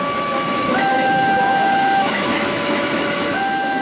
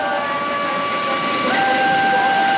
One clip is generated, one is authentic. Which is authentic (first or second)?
second